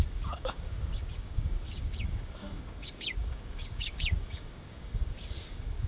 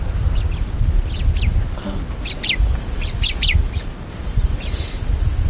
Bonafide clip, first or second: second